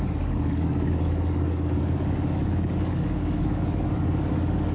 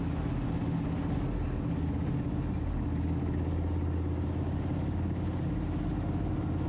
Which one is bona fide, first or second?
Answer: second